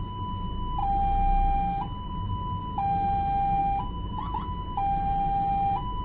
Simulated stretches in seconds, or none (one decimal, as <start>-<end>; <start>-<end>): 3.6-4.2